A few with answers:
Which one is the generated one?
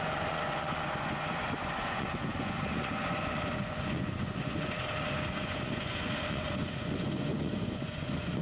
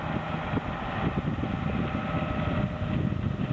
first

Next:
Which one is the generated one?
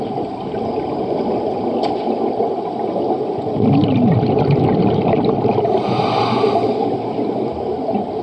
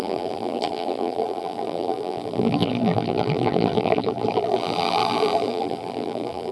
second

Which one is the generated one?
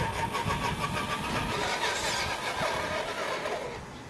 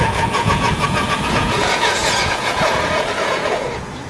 second